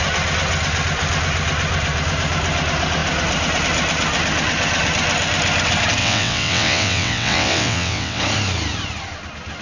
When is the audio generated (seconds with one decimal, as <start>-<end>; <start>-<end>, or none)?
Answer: 6.0-8.2

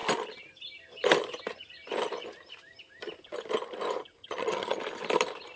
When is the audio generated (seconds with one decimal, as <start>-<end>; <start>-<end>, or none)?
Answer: 4.2-4.8

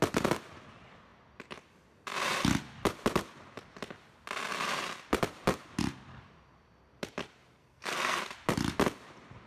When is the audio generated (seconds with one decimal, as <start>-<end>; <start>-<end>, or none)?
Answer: 7.6-8.2

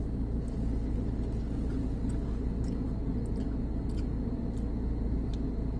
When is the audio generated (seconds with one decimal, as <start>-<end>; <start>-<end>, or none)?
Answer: none

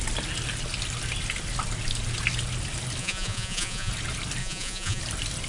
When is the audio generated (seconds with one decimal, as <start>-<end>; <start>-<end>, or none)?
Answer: 3.0-3.9; 4.4-5.0

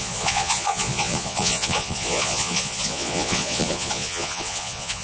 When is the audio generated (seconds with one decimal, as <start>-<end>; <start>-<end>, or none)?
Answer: 0.0-5.0

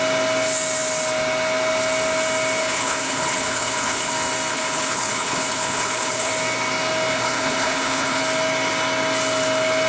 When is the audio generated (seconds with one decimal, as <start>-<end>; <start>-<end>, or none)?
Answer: 2.6-4.1; 4.5-6.3; 7.1-8.2